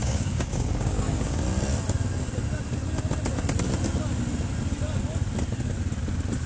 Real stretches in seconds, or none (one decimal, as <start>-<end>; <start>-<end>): 1.4-6.5